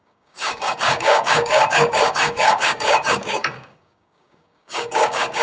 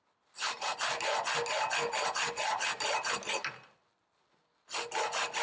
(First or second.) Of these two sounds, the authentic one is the second